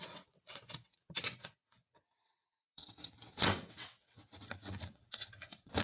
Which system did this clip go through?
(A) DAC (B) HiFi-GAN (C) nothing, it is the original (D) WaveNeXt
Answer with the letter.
D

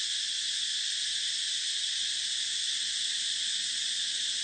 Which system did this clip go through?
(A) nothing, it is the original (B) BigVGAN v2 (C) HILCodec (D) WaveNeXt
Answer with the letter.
A